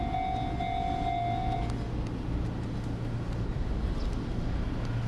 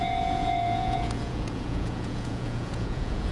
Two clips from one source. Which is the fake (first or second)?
second